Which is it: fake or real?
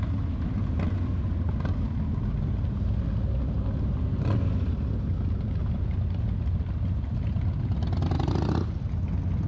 real